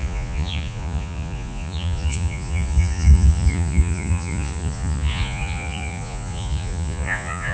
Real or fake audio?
fake